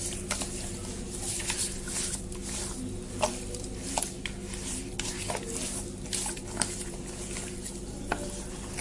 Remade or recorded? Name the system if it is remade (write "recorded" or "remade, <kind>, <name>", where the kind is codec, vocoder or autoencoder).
recorded